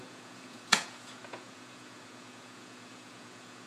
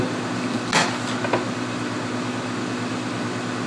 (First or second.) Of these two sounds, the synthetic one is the first